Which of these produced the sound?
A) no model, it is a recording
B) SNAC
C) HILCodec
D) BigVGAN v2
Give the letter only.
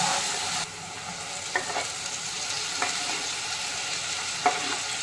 A